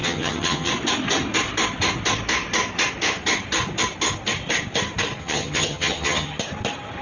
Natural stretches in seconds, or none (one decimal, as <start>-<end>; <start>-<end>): 0.7-5.2; 6.4-7.0